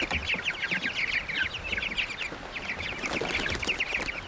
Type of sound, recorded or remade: recorded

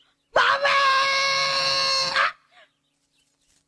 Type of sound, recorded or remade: recorded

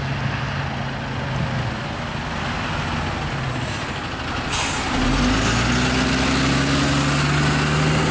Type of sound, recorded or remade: recorded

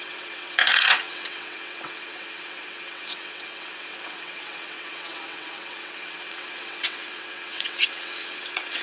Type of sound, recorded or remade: remade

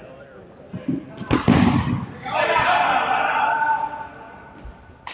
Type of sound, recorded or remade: recorded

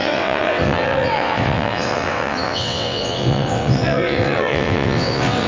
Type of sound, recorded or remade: remade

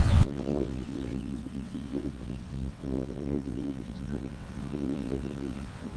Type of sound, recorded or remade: remade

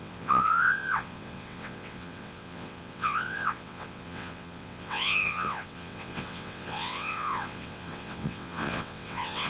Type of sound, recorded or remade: remade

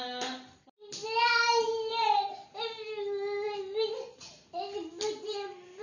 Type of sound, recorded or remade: recorded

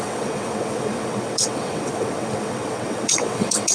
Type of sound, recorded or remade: remade